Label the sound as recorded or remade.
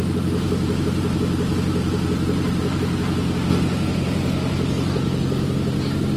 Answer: recorded